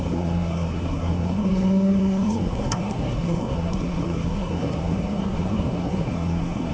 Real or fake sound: fake